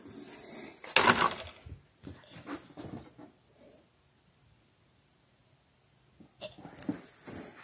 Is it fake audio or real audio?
real